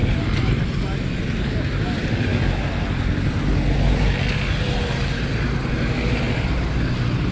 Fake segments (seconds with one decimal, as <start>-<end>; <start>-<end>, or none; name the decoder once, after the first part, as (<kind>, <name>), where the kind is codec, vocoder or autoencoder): none